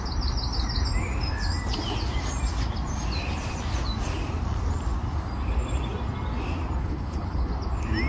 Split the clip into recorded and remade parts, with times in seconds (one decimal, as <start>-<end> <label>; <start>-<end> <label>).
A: 0.0-6.8 recorded; 6.8-7.5 remade; 7.5-8.1 recorded